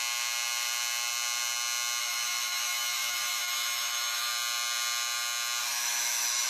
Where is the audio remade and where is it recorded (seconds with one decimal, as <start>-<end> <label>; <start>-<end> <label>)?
0.0-2.0 recorded; 2.0-4.3 remade; 4.3-5.6 recorded; 5.6-6.5 remade